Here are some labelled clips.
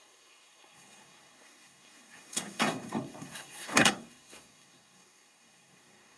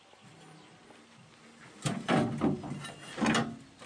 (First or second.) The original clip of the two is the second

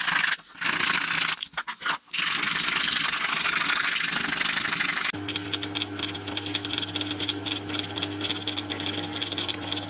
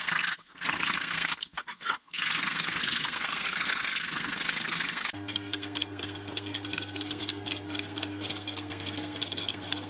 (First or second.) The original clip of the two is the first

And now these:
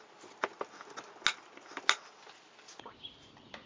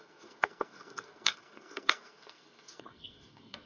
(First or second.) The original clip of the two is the first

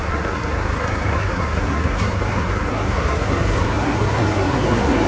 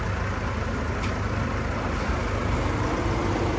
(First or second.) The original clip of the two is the second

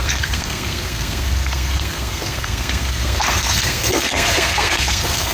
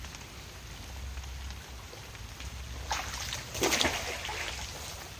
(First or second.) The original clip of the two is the second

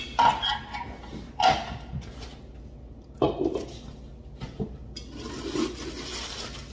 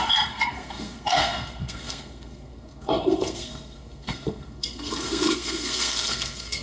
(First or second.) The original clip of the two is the first